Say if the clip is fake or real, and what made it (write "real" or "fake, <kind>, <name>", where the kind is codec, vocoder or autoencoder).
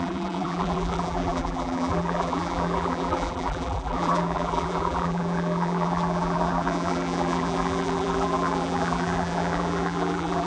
fake, vocoder, BigVGAN v2